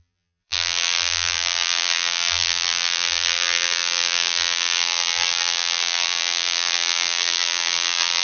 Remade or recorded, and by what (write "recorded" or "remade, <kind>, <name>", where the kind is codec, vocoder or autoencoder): remade, vocoder, BigVGAN v2